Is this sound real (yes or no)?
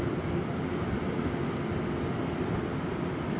yes